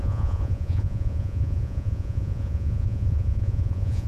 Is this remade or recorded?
remade